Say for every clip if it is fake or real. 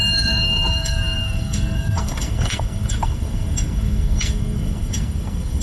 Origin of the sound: fake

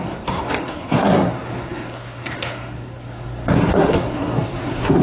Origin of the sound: fake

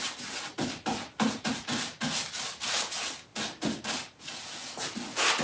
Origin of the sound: real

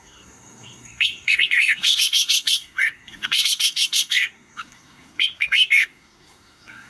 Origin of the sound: fake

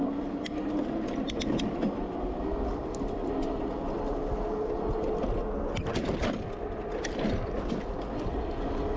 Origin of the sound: real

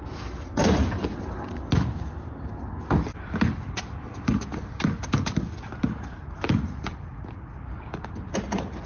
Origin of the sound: real